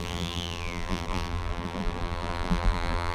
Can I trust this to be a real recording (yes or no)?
no